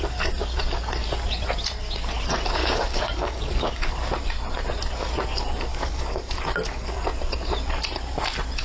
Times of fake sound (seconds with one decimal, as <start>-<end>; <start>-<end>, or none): 2.6-4.1; 5.7-7.0